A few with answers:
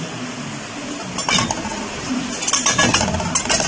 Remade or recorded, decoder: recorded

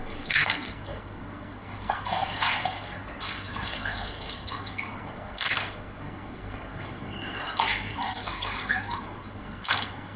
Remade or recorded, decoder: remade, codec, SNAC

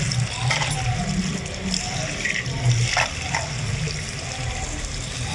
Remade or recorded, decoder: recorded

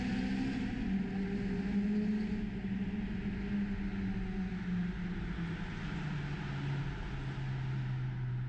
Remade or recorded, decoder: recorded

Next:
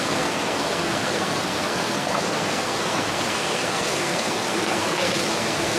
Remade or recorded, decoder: remade, codec, SNAC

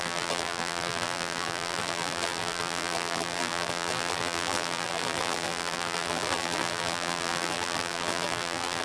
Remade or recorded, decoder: remade, vocoder, BigVGAN v2